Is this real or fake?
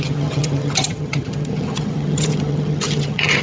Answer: fake